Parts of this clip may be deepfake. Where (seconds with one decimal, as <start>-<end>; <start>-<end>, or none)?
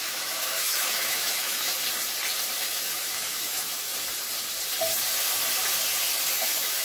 0.0-1.7; 2.6-3.9; 6.3-6.8